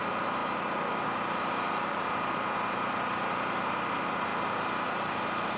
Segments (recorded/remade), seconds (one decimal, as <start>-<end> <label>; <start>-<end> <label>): 0.0-5.6 recorded